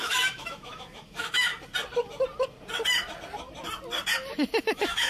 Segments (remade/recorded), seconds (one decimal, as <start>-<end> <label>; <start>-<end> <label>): 0.0-1.5 remade; 1.5-4.6 recorded; 4.6-5.1 remade

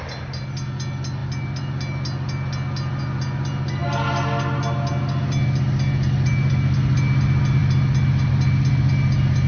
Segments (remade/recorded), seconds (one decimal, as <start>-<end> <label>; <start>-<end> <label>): 0.0-9.5 recorded

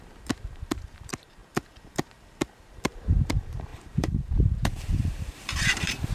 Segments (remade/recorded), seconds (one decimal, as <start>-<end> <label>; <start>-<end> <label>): 0.0-1.4 remade; 1.4-1.9 recorded; 1.9-6.1 remade

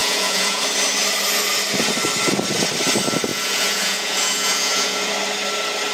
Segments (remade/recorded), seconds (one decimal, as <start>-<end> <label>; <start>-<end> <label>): 0.0-0.6 remade; 0.6-3.3 recorded; 3.3-5.1 remade; 5.1-5.9 recorded